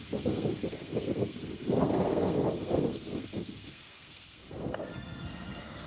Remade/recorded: remade